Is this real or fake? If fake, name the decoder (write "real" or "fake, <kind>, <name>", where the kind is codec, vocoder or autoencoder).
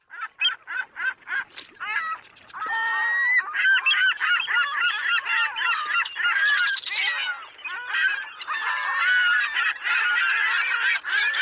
real